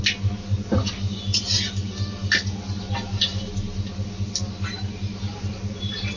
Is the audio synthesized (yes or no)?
no